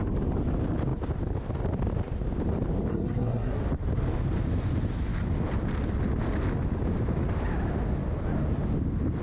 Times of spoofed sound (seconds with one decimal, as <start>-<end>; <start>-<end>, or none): 2.9-3.6